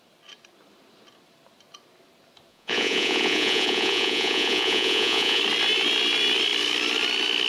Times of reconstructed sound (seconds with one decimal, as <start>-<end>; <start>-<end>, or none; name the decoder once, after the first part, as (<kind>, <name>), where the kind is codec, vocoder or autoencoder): 2.5-5.4 (vocoder, Vocos)